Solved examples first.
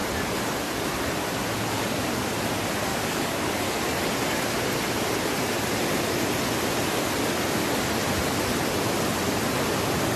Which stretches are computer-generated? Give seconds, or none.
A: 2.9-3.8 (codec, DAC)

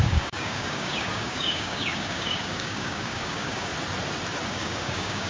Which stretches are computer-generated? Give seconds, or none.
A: 0.0-3.7 (codec, DAC); 4.5-5.3

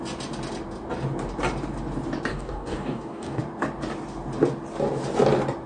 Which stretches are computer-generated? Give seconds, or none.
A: 2.3-3.4 (codec, DAC)

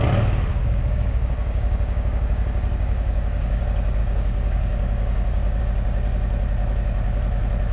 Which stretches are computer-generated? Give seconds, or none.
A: 0.5-3.6 (codec, DAC); 4.0-5.6

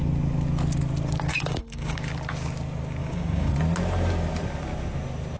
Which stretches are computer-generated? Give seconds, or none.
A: 1.3-2.0 (codec, DAC); 3.0-3.5